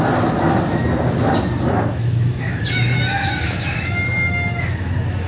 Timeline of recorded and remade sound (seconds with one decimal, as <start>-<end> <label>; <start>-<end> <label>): 0.0-1.9 recorded; 1.9-5.3 remade